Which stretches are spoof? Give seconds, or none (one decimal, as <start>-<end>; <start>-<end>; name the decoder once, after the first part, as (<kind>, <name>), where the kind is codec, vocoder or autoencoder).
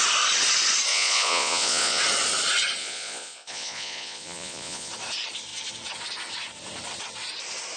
0.9-2.0 (vocoder, Vocos); 2.8-4.9